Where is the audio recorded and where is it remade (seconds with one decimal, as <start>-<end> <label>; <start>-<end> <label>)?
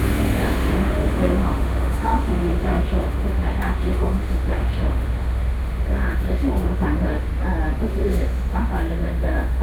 0.0-7.3 remade; 7.3-7.8 recorded; 7.8-9.6 remade